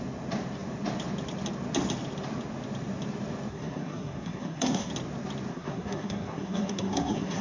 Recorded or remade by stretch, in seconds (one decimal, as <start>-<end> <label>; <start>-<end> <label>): 0.0-3.5 recorded; 3.5-4.9 remade; 4.9-5.5 recorded; 5.5-7.4 remade